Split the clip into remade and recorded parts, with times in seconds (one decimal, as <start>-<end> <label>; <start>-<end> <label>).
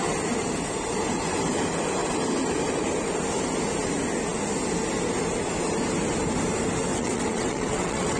0.0-6.9 recorded; 6.9-8.2 remade